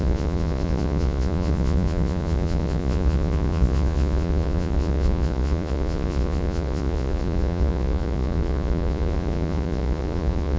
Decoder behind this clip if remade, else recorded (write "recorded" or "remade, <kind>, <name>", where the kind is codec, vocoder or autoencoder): remade, vocoder, Vocos